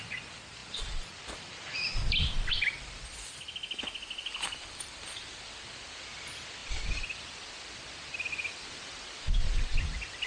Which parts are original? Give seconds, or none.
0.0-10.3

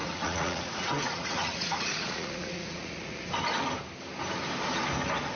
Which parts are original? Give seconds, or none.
3.2-5.3

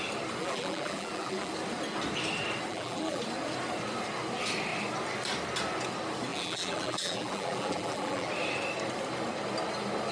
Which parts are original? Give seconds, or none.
0.0-0.4; 1.5-2.7; 3.2-6.3; 8.3-10.1

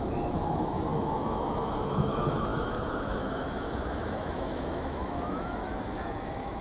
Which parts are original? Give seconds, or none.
none

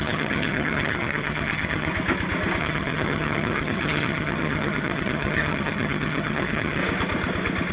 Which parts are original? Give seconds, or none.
1.9-2.6; 6.8-7.7

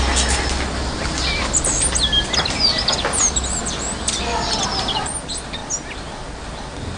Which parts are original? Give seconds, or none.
0.0-7.0

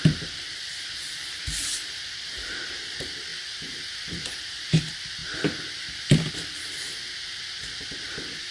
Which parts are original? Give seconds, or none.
none

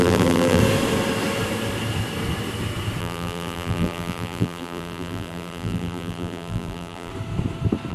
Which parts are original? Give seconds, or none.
0.6-3.0; 7.1-7.9